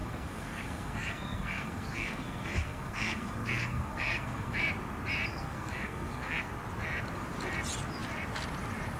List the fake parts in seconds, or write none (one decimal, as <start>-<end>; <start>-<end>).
0.0-4.6; 5.3-6.5